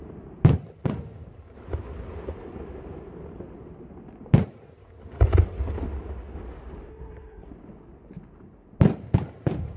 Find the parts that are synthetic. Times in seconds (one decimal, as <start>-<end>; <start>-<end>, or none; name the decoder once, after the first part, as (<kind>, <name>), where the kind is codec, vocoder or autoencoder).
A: 6.9-7.5 (codec, SNAC)